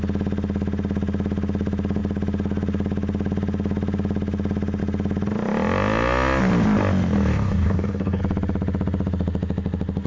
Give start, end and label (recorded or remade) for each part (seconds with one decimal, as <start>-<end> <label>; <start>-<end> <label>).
0.0-7.3 recorded; 7.3-8.2 remade; 8.2-10.1 recorded